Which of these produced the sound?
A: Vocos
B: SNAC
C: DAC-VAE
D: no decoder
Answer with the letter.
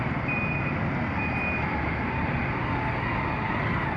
D